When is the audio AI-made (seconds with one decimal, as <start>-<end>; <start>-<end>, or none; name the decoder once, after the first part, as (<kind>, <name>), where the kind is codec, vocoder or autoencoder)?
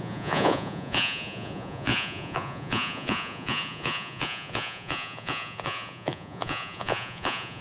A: 0.0-7.6 (vocoder, Vocos)